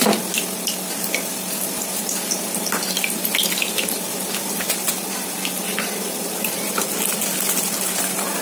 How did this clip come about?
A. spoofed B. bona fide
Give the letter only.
B